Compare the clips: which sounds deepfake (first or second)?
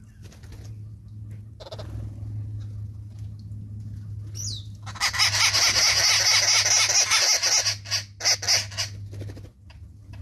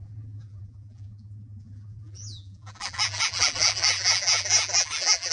second